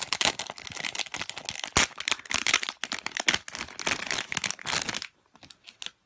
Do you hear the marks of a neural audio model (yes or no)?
no